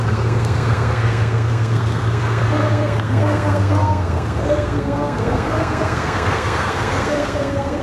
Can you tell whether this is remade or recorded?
remade